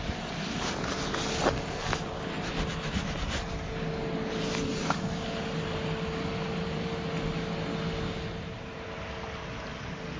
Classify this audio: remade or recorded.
recorded